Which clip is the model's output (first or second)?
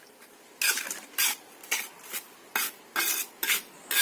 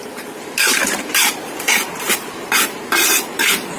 second